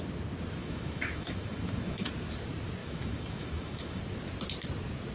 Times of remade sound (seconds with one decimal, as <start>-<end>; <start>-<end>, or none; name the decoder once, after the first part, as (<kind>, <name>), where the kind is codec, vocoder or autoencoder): 0.6-2.1 (autoencoder, DAC-VAE); 2.8-4.0